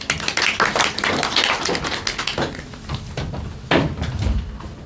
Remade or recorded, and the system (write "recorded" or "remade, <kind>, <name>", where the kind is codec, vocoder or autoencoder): recorded